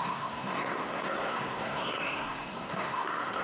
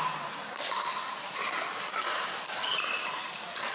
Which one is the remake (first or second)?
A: first